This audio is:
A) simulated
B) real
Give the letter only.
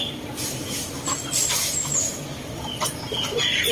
A